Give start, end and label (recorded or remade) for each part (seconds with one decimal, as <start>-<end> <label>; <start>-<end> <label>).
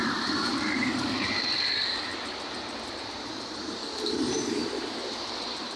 0.0-2.1 remade; 2.1-3.1 recorded; 3.1-5.8 remade